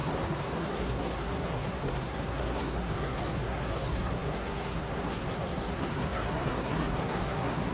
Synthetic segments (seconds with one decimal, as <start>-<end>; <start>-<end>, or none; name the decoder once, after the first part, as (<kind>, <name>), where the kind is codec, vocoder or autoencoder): 0.0-7.7 (codec, SNAC)